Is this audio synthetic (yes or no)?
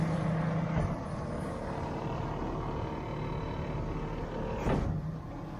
no